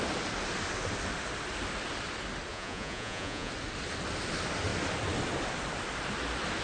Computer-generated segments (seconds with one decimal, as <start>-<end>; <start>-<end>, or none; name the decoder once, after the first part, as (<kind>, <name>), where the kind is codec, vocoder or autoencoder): 2.5-3.5 (vocoder, Vocos)